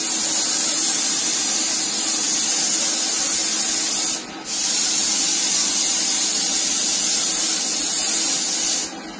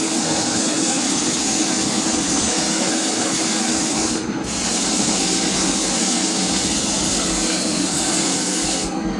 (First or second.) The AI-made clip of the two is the second